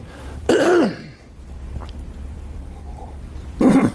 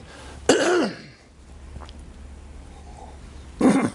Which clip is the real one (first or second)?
second